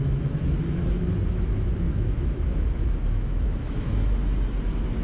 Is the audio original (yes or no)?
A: no